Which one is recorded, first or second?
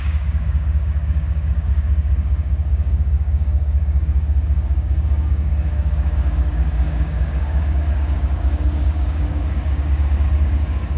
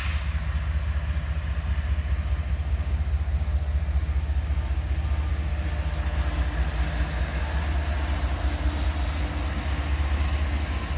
second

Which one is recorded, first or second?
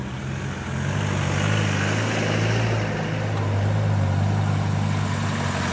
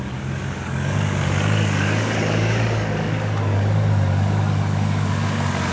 first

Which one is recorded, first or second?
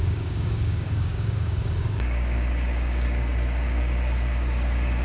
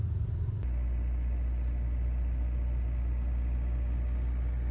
second